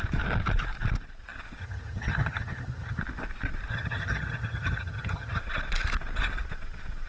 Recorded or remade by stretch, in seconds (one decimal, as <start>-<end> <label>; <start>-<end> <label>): 0.0-1.6 recorded; 1.6-3.0 remade; 3.0-3.7 recorded; 3.7-5.4 remade; 5.4-7.1 recorded